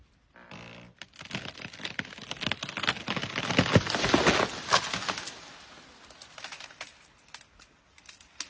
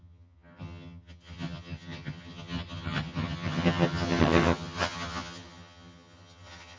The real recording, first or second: first